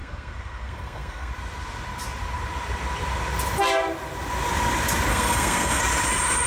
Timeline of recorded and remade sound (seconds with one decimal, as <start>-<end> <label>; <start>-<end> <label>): 0.0-1.3 remade; 1.3-5.1 recorded; 5.1-5.8 remade; 5.8-6.5 recorded